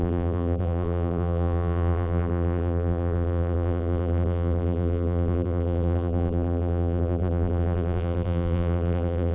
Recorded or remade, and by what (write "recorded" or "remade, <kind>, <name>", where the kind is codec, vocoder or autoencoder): remade, vocoder, BigVGAN v2